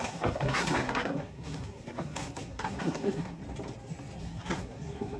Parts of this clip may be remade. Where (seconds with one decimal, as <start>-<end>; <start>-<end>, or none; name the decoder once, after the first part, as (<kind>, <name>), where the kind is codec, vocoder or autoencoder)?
0.0-3.4 (codec, SNAC); 4.2-5.2